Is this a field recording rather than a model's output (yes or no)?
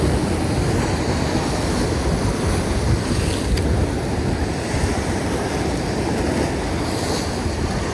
yes